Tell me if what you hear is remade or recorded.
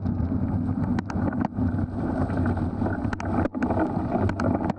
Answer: recorded